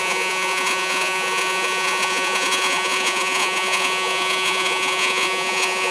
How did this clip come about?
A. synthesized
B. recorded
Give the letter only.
A